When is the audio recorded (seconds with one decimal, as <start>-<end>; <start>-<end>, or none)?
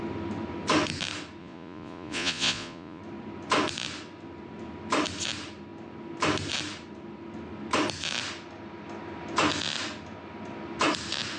0.0-1.4; 3.0-11.4